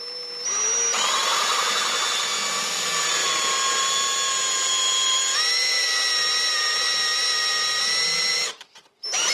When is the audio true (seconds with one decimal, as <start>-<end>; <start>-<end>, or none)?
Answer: 0.0-9.3